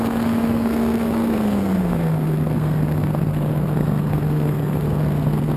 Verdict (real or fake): fake